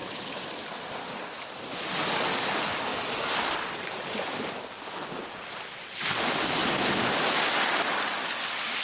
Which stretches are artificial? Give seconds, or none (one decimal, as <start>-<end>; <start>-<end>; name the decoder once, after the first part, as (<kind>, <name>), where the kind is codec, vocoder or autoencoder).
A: 0.0-1.2 (vocoder, BigVGAN v2); 2.9-5.4; 6.6-7.3